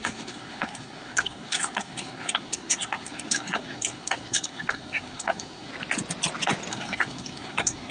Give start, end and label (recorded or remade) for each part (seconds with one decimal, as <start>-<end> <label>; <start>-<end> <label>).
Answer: 0.0-5.7 remade; 5.7-6.7 recorded; 6.7-7.9 remade